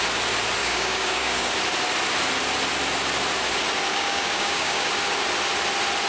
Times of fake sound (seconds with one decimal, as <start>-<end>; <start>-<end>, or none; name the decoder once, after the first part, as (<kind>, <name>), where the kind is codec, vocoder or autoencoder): 0.6-1.5 (codec, DAC); 3.9-4.9